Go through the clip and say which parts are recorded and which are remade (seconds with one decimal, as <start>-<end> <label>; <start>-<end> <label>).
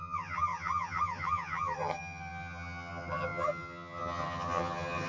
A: 0.0-5.1 remade